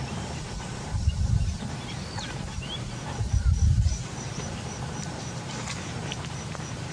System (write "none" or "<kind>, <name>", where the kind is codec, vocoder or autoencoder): vocoder, BigVGAN v2